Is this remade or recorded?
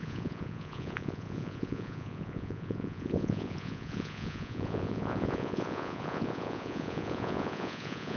remade